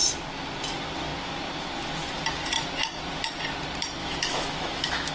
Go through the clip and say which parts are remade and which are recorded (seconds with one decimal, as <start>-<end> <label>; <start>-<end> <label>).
0.0-4.0 recorded; 4.0-5.1 remade